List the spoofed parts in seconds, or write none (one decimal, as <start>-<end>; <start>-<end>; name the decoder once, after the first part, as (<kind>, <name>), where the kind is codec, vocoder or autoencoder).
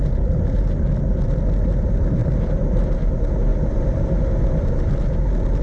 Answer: 2.2-3.1 (vocoder, BigVGAN v2); 3.5-4.0